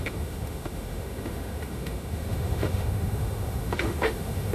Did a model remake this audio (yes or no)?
yes